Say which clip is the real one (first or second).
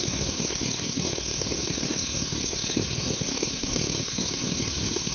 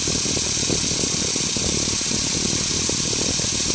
second